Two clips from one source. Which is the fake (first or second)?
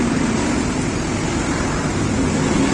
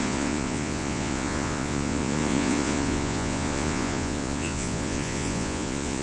second